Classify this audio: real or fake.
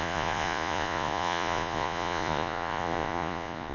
fake